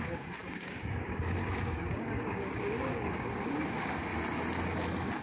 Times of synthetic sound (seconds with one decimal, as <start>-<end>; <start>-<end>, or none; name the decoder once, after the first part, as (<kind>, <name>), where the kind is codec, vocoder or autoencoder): 0.0-4.1 (codec, DAC)